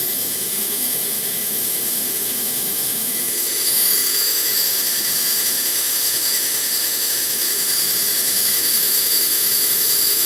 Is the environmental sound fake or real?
fake